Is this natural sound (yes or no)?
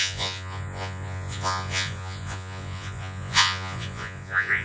no